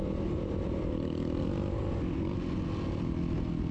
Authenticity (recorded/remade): recorded